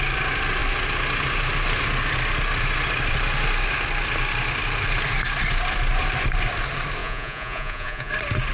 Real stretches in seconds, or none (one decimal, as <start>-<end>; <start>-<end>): 0.0-7.0; 8.1-8.5

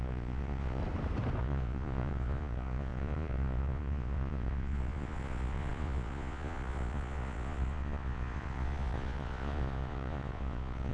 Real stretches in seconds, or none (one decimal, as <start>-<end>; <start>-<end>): 0.8-1.4

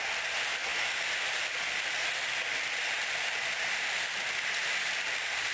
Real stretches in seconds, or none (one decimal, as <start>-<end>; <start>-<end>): 0.0-5.5

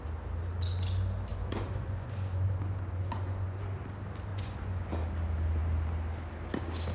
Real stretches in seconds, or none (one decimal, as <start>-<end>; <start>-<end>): 0.0-1.3; 3.6-4.3; 4.9-6.9

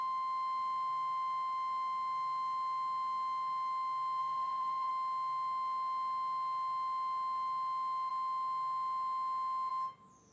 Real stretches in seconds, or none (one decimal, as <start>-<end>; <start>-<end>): 0.0-4.2; 4.9-10.3

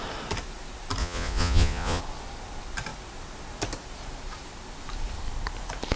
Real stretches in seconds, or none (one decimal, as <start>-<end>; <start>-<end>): 0.0-1.0; 2.0-6.0

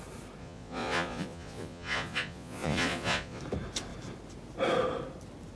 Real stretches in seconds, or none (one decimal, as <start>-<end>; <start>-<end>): 0.0-0.4; 3.4-5.6